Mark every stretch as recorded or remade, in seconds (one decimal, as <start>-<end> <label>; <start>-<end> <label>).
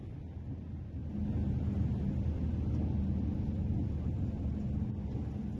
0.0-5.6 recorded